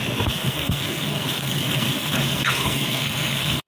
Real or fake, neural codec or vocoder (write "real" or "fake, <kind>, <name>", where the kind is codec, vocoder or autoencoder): fake, codec, SNAC